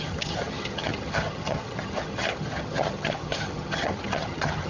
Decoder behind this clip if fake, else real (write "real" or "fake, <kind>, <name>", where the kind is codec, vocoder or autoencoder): fake, vocoder, HiFi-GAN